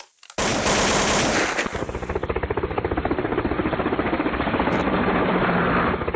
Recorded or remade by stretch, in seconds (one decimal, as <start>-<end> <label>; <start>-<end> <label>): 0.0-0.5 recorded; 0.5-1.3 remade; 1.3-3.6 recorded; 3.6-5.4 remade; 5.4-6.2 recorded

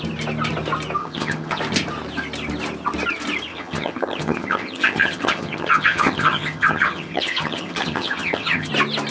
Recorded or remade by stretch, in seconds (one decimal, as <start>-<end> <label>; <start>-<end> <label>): 0.0-1.0 recorded; 1.0-1.6 remade; 1.6-3.5 recorded; 3.5-8.7 remade; 8.7-9.1 recorded

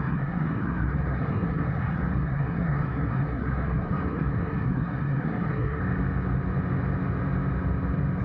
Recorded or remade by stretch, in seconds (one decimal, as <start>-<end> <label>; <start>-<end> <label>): 0.0-5.8 remade; 5.8-8.2 recorded

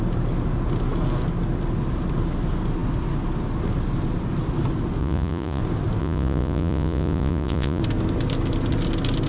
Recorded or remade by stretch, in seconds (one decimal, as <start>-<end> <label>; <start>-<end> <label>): 0.0-5.0 recorded; 5.0-5.6 remade; 5.6-6.0 recorded; 6.0-7.8 remade; 7.8-9.3 recorded